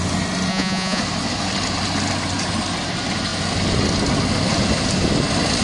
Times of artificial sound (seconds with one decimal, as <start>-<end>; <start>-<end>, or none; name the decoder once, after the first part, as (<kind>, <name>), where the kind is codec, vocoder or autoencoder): 0.5-1.0 (vocoder, Vocos)